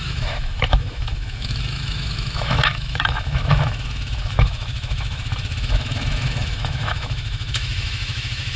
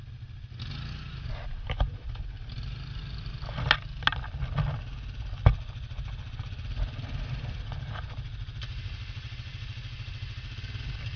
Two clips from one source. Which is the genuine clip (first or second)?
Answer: second